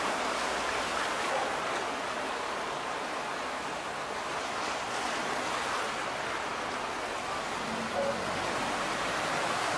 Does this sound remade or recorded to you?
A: recorded